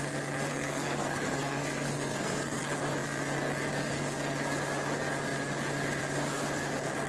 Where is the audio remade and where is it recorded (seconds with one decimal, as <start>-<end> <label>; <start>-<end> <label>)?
0.0-0.5 recorded; 0.5-2.6 remade; 2.6-7.1 recorded